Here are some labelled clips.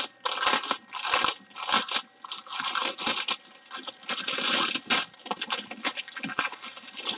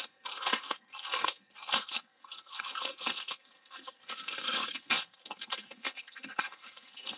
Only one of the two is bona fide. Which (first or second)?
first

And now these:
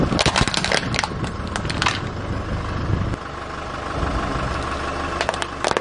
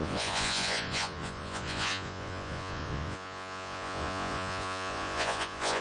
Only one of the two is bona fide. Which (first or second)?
first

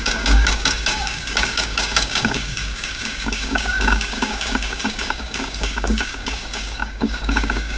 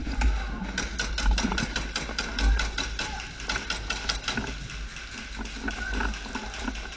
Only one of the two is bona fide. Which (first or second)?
second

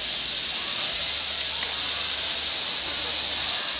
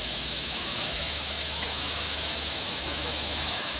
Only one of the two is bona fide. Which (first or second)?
first